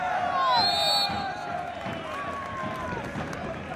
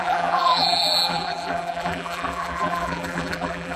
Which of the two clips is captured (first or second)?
first